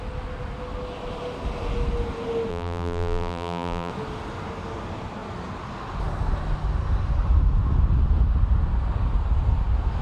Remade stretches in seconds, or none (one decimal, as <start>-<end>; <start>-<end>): 2.5-3.9